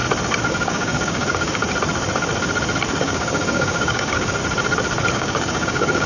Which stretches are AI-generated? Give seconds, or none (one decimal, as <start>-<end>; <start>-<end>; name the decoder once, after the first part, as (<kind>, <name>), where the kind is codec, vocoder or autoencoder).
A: 0.5-1.6 (codec, DAC); 3.0-4.4; 5.1-6.1